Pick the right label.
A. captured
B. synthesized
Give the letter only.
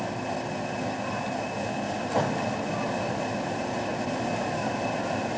A